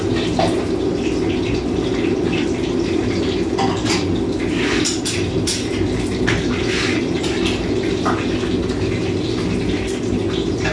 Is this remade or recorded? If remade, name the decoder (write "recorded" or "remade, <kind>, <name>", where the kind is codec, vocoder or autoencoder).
recorded